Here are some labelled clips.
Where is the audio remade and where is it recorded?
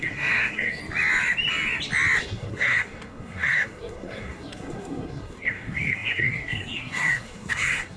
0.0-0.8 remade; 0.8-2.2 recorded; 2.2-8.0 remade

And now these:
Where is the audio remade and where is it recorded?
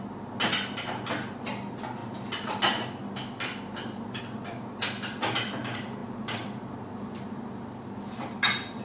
0.0-6.0 recorded; 6.0-8.0 remade; 8.0-8.8 recorded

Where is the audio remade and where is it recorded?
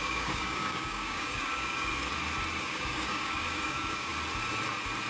0.0-1.9 remade; 1.9-2.6 recorded; 2.6-4.1 remade; 4.1-5.1 recorded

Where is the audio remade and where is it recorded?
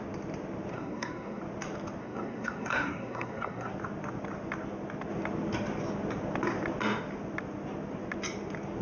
0.0-0.7 recorded; 0.7-1.4 remade; 1.4-2.0 recorded; 2.0-3.7 remade; 3.7-8.8 recorded